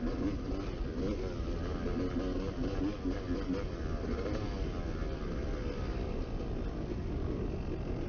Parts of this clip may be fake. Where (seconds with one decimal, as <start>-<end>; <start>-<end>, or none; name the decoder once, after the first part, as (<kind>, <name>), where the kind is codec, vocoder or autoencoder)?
none

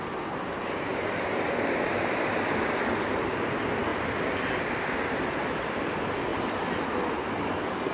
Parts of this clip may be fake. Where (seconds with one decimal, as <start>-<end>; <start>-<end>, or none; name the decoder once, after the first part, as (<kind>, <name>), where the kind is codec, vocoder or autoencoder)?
none

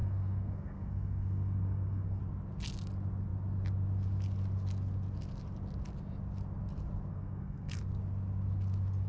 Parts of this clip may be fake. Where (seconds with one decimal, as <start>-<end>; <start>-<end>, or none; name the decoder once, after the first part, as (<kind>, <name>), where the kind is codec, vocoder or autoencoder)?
0.0-2.2 (codec, SNAC); 7.1-7.8

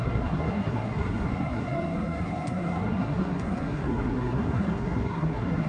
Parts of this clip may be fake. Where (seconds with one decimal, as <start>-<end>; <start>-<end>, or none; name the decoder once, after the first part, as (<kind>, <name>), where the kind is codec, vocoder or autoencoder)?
0.0-5.7 (codec, SNAC)

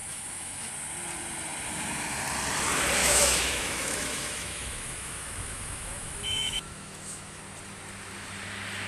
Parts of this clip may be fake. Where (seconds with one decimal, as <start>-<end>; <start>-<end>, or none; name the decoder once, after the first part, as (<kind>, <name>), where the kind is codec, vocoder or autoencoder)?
0.0-0.7 (autoencoder, DAC-VAE); 3.0-7.4

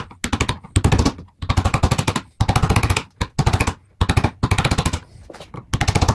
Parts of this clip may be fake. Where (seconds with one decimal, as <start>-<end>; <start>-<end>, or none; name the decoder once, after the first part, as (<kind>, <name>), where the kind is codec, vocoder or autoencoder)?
none